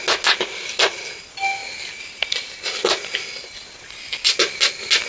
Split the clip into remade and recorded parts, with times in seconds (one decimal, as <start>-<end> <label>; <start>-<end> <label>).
0.0-5.1 recorded